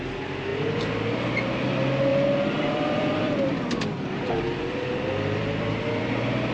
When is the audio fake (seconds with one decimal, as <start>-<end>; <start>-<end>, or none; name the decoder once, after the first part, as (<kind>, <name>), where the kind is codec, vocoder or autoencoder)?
2.1-6.0 (vocoder, BigVGAN v2)